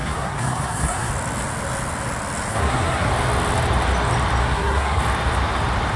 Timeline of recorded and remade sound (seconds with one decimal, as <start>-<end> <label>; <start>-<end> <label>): 0.0-1.1 remade; 1.1-2.5 recorded; 2.5-3.1 remade; 3.1-4.4 recorded; 4.4-5.0 remade; 5.0-6.0 recorded